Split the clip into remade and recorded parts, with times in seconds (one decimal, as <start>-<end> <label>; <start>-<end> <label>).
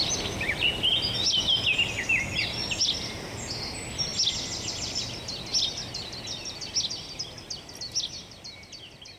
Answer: 0.0-9.2 recorded